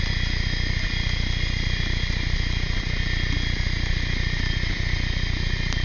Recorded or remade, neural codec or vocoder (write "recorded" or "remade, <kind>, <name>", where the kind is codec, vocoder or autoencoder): recorded